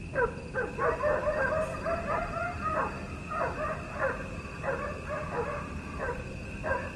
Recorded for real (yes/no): yes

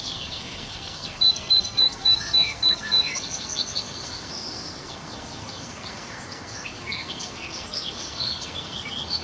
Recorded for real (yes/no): no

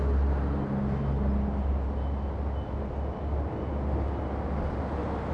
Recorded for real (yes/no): yes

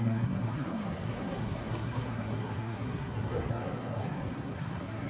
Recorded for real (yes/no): no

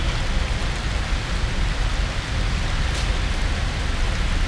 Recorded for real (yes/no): yes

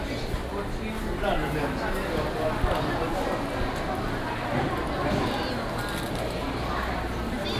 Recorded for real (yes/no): yes